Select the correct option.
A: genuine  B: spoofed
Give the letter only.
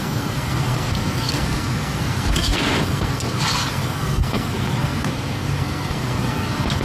B